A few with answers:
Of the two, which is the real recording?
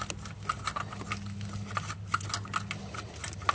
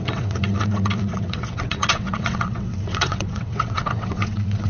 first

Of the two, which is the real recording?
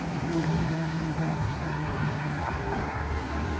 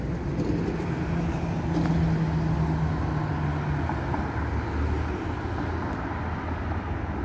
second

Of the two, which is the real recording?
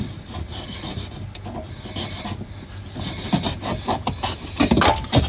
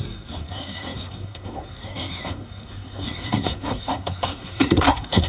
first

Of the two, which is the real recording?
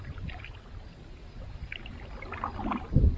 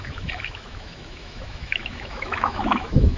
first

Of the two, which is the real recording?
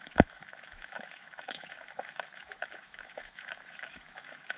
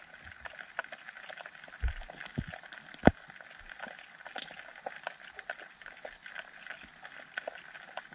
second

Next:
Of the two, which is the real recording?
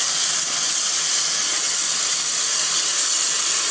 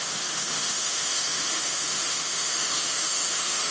first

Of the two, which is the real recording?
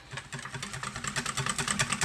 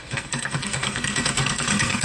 first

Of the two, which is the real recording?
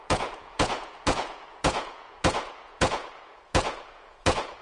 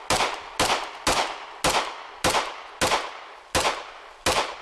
second